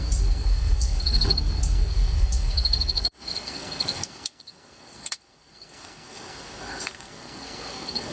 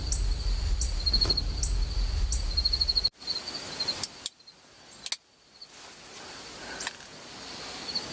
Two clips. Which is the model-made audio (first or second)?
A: first